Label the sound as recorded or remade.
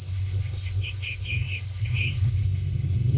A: remade